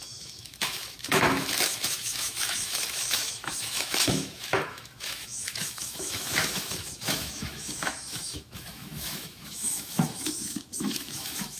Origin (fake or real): fake